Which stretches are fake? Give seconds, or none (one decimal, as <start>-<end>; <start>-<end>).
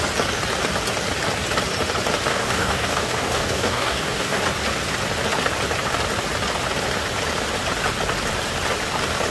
2.3-4.4